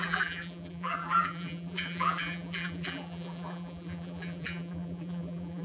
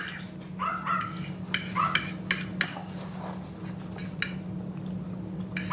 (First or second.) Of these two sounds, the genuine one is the second